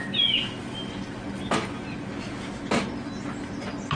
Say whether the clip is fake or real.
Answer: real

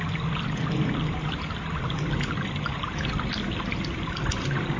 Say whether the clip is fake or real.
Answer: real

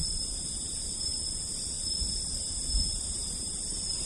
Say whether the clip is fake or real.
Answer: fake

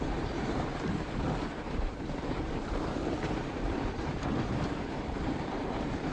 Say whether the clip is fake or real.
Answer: fake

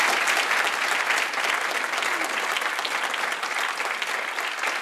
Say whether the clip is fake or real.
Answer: real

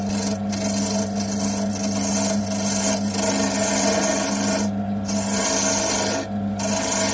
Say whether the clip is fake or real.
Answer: real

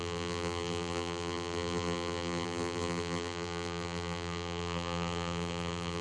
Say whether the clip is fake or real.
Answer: fake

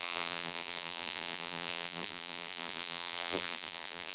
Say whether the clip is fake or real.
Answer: fake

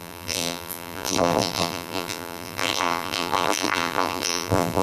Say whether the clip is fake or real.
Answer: fake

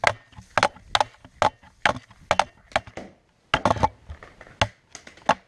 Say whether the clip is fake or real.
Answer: real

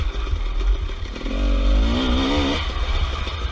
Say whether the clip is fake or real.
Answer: real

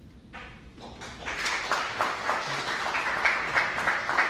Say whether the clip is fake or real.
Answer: real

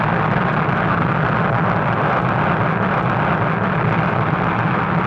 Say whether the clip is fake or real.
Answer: real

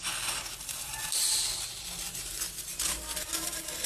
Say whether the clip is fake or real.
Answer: fake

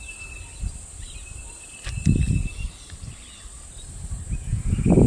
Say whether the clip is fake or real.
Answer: real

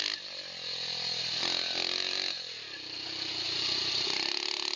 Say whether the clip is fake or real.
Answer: real